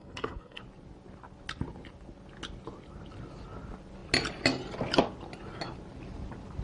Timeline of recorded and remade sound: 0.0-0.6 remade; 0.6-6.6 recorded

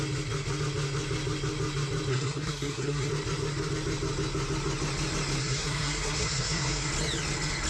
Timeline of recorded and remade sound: 0.0-2.1 recorded; 2.1-3.1 remade; 3.1-5.4 recorded; 5.4-6.9 remade; 6.9-7.7 recorded

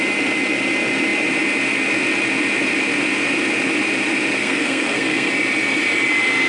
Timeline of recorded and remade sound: 0.0-4.4 recorded; 4.4-5.3 remade; 5.3-6.5 recorded

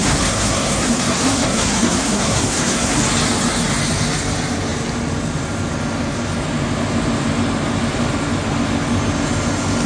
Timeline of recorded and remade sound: 0.0-3.0 remade; 3.0-9.9 recorded

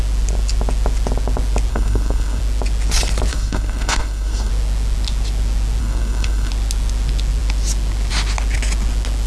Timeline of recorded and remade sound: 0.0-1.7 recorded; 1.7-2.4 remade; 2.4-3.3 recorded; 3.3-4.5 remade; 4.5-5.8 recorded; 5.8-6.5 remade; 6.5-9.3 recorded

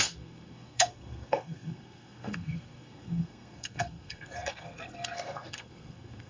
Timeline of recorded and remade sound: 0.0-6.3 remade